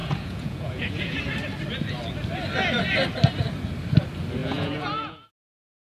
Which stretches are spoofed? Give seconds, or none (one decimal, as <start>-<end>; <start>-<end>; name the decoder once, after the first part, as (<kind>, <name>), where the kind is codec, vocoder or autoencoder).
0.0-1.2 (vocoder, Vocos); 4.4-5.3